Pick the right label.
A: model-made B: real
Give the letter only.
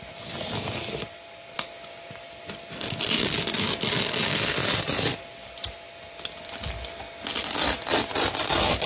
B